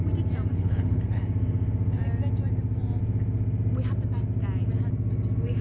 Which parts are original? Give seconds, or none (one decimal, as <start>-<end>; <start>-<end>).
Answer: 0.0-0.5; 1.2-5.6